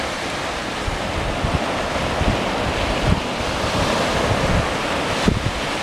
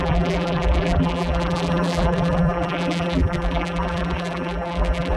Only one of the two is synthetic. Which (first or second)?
second